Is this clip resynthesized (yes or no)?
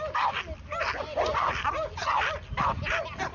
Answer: no